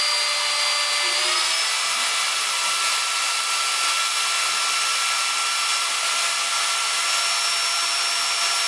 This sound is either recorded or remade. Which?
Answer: recorded